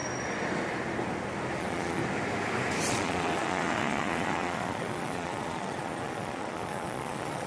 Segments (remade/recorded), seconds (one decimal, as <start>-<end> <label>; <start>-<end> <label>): 0.0-1.6 recorded; 1.6-2.0 remade; 2.0-2.9 recorded; 2.9-7.5 remade